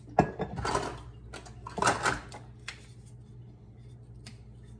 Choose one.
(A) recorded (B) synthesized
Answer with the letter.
A